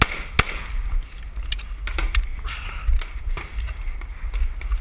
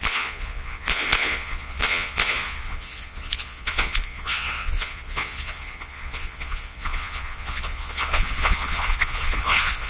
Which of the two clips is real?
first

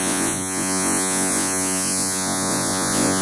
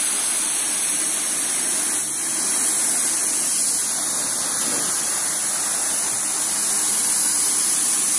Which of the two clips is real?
second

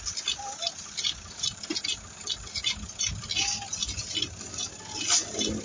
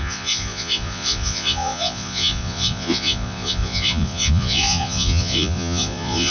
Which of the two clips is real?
first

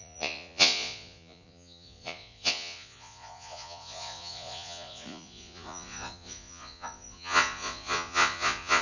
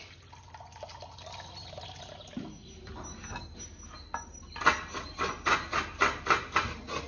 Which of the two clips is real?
second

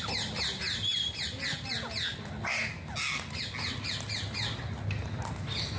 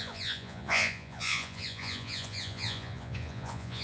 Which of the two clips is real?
first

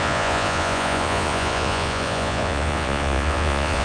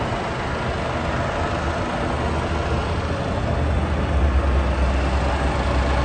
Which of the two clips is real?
second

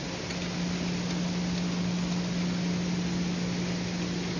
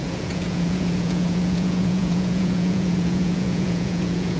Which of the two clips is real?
first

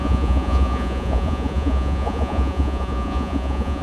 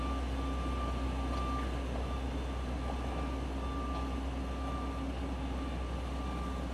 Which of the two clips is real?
second